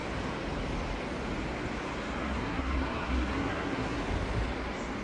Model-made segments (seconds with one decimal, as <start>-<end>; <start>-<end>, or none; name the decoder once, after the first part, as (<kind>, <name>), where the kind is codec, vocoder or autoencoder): 2.2-4.0 (codec, SNAC)